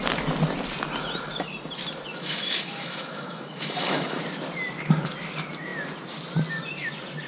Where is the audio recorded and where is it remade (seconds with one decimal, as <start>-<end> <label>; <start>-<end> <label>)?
0.0-2.1 recorded; 2.1-4.2 remade; 4.2-7.3 recorded